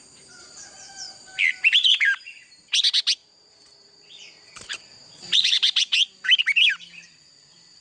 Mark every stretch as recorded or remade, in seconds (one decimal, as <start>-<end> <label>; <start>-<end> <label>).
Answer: 0.0-0.4 recorded; 0.4-2.2 remade; 2.2-3.2 recorded; 3.2-6.7 remade; 6.7-7.8 recorded